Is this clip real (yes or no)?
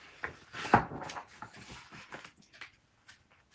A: yes